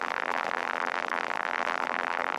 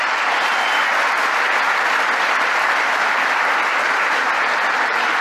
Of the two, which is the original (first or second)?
second